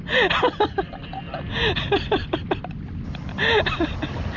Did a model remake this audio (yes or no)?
no